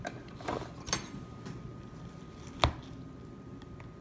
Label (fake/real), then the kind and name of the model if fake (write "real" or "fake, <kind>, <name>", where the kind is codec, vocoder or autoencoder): real